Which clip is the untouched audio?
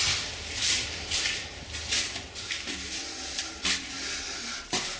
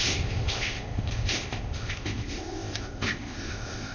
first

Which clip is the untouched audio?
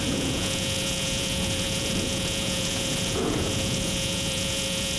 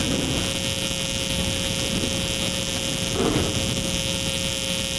second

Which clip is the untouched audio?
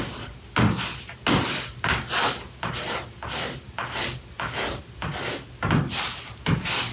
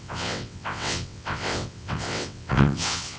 first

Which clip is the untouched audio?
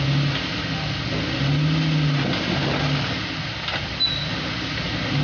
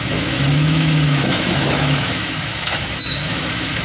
first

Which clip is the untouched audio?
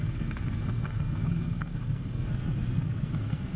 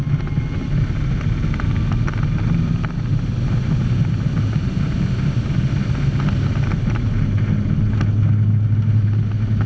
second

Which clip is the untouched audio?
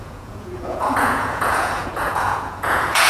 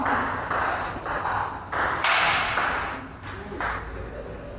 second